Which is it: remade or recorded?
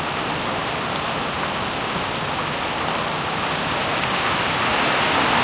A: recorded